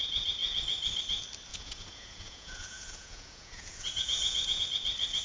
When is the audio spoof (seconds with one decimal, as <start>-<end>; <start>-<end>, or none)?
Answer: 1.5-4.6